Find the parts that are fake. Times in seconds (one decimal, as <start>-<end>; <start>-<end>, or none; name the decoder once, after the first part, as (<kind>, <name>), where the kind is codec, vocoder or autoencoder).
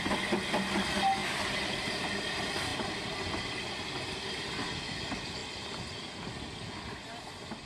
1.2-2.3 (vocoder, BigVGAN v2); 2.7-4.5